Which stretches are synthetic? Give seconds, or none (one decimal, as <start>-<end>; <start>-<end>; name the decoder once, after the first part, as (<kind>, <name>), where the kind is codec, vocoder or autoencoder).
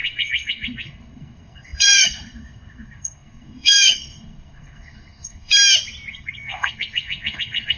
0.0-5.5 (codec, SNAC); 6.1-7.8